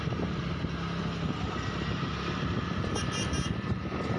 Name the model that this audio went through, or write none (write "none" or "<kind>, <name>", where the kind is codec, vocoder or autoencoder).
none